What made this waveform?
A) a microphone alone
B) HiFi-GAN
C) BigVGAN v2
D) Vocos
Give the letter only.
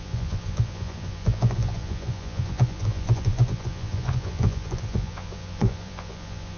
D